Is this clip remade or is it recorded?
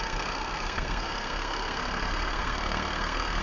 remade